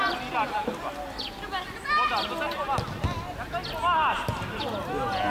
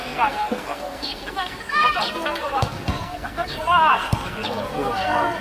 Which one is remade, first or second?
second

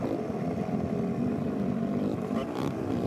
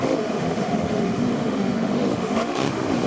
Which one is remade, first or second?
second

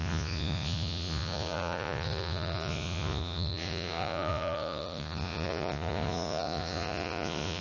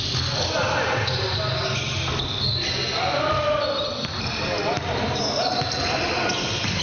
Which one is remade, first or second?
first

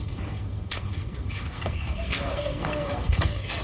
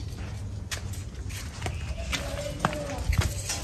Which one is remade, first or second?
first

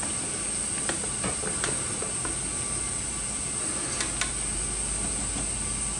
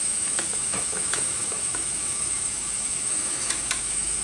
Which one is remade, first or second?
second